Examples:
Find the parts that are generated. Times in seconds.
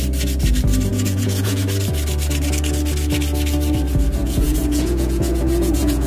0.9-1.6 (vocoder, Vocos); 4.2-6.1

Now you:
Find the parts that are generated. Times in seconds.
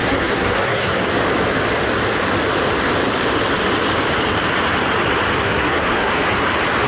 0.0-1.0 (codec, SNAC); 5.4-6.1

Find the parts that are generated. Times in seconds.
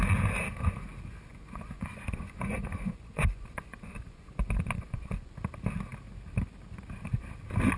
1.3-5.3 (vocoder, Vocos)